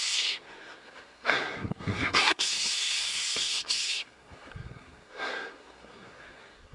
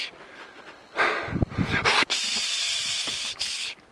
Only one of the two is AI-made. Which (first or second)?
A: first